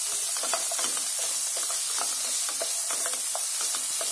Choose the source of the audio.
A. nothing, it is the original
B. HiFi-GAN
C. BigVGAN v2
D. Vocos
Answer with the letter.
A